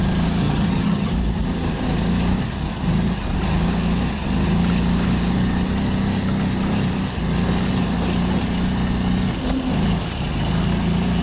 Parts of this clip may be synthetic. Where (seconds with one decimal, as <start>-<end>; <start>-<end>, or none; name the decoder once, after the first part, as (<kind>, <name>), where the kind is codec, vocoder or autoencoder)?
0.4-1.1 (vocoder, HiFi-GAN)